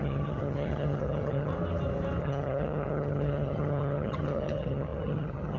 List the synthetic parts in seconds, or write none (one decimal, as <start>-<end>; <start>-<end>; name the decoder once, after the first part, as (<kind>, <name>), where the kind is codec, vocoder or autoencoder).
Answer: 0.0-1.5 (vocoder, HiFi-GAN); 2.2-5.6

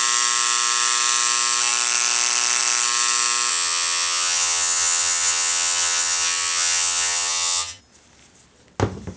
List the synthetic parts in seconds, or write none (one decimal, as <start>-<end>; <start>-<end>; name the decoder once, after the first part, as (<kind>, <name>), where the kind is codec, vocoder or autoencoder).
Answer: 3.5-7.8 (vocoder, HiFi-GAN)

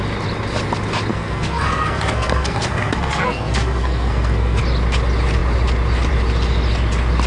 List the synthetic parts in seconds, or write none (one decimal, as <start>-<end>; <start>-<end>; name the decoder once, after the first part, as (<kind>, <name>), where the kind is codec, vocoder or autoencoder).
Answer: 1.1-4.6 (codec, SNAC)

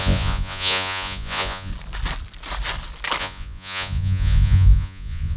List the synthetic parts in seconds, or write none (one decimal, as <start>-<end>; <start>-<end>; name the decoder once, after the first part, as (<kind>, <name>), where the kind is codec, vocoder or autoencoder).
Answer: 0.0-1.7 (vocoder, Vocos); 3.2-5.4

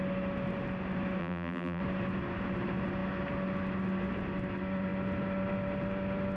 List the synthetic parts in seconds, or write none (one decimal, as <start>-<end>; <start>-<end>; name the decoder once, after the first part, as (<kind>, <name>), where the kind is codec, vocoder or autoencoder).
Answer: 1.2-1.8 (vocoder, BigVGAN v2)

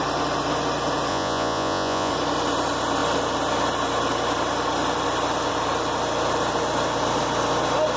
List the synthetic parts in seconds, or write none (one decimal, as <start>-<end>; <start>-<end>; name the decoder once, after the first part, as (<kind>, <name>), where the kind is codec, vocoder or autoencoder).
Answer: 1.1-2.1 (vocoder, Vocos)

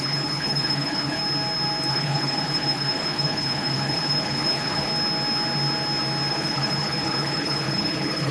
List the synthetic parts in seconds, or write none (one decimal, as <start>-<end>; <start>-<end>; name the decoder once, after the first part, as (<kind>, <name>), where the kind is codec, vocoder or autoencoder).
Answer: 0.0-1.2 (codec, HILCodec); 1.9-4.9; 6.3-8.3